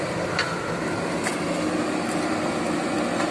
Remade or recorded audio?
recorded